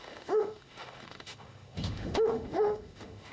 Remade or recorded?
remade